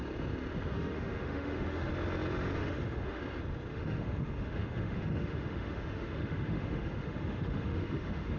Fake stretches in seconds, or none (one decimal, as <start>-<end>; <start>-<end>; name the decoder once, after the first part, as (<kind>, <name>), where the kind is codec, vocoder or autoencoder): 0.7-1.9 (autoencoder, DAC-VAE); 2.6-3.2; 3.7-8.4